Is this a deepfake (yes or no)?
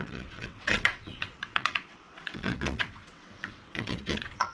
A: yes